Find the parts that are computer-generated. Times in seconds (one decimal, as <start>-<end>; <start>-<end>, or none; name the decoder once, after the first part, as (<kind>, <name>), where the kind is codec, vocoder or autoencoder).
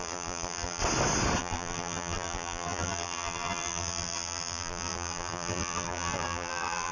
0.0-0.8 (vocoder, BigVGAN v2); 1.4-6.9